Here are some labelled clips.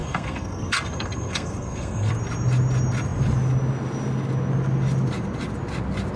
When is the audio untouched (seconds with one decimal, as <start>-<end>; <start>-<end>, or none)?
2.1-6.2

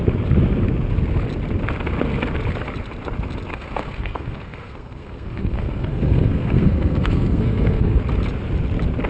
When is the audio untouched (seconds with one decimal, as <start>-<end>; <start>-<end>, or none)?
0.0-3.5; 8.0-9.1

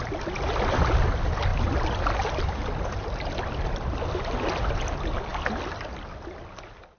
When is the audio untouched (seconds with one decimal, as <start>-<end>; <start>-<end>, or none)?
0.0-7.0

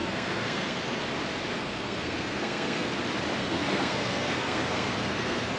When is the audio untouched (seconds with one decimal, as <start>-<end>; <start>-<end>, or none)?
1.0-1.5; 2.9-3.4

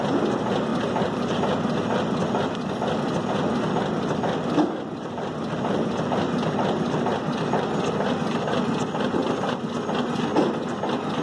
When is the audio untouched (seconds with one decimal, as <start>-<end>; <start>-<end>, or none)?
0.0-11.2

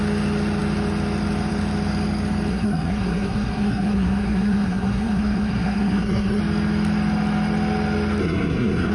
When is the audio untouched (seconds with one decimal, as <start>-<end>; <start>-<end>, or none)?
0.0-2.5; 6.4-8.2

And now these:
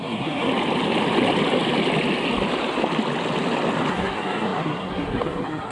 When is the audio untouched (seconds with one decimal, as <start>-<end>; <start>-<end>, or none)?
0.5-3.9

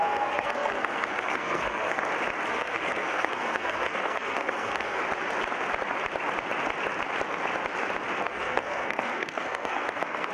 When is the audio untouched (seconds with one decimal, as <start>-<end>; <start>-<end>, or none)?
2.0-2.5; 5.0-8.1